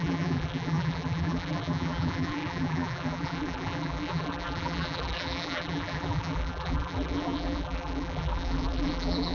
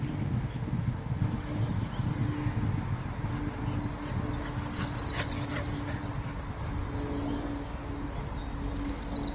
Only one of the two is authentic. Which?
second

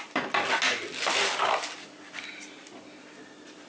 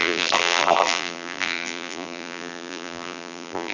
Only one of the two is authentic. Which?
first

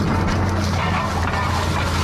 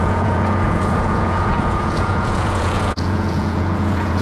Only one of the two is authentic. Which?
first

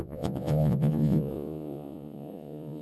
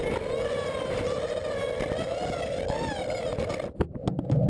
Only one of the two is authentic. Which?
second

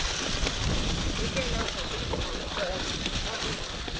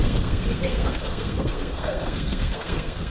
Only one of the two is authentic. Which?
first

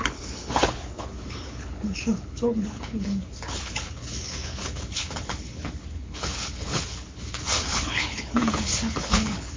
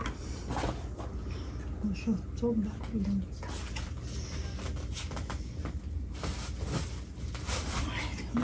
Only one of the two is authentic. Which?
second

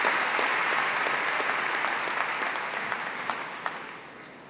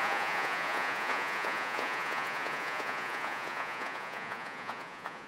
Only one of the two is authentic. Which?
first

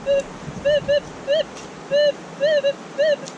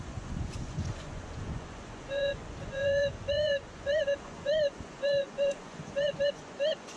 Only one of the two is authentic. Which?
first